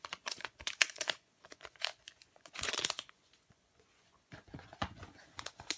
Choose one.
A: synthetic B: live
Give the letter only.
A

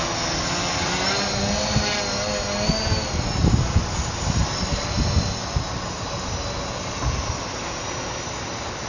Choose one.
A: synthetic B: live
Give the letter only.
B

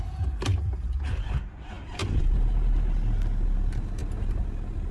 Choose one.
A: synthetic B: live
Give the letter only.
B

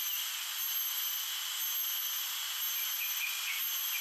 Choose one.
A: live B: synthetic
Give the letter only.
A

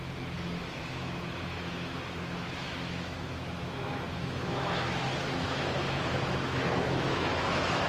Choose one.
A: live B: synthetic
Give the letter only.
B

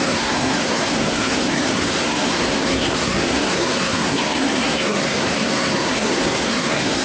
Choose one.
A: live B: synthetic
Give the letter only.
B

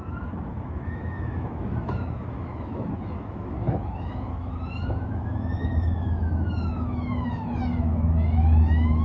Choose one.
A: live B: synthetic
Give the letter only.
B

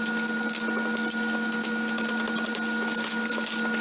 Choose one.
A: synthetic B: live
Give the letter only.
B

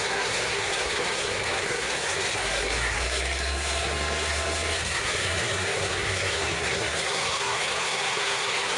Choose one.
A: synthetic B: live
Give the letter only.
A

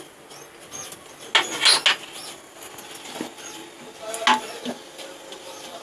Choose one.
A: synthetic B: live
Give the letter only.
B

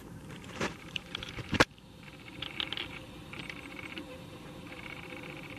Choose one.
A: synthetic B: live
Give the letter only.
A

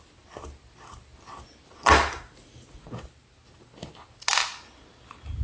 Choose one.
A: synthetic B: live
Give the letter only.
B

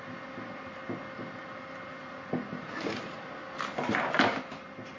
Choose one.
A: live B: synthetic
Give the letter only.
A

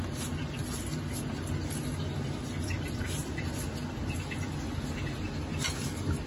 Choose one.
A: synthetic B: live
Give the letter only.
B